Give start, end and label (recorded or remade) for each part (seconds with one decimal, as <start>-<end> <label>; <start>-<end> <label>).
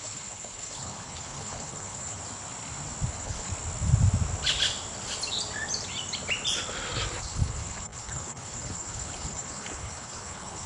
0.0-2.2 remade; 2.2-3.1 recorded; 3.1-3.5 remade; 3.5-7.2 recorded; 7.2-10.7 remade